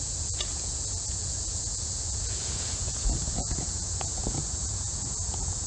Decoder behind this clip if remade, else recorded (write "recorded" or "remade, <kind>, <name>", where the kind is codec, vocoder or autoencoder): remade, vocoder, Vocos